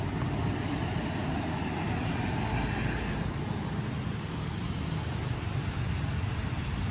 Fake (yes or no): no